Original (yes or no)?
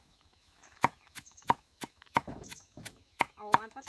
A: no